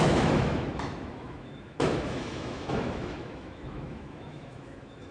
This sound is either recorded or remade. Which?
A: remade